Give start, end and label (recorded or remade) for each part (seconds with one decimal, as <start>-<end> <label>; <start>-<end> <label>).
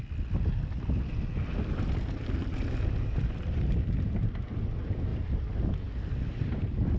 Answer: 0.0-7.0 recorded